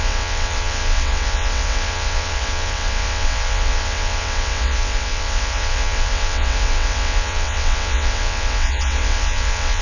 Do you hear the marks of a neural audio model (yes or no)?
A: yes